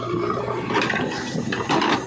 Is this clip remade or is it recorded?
remade